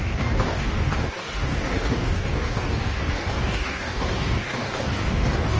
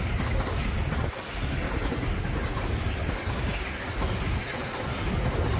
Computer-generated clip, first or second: first